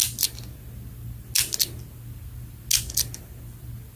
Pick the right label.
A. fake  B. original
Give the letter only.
B